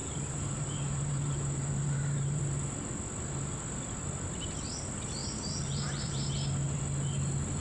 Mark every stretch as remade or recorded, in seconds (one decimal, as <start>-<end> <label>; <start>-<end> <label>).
0.0-2.4 remade; 2.4-5.2 recorded; 5.2-6.3 remade; 6.3-7.6 recorded